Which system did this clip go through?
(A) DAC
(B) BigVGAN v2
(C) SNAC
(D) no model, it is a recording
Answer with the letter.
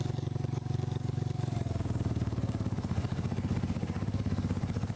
A